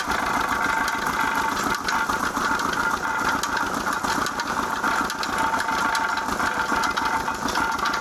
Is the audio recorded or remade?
recorded